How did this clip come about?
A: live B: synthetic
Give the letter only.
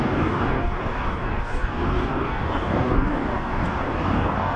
B